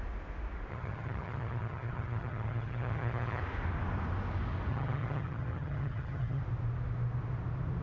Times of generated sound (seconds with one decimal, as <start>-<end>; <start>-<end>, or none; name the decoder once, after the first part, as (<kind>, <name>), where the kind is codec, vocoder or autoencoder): 0.7-3.4 (vocoder, HiFi-GAN); 4.7-6.4